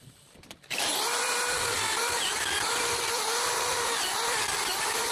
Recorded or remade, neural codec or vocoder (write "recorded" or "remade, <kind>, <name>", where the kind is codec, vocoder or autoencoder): remade, vocoder, BigVGAN v2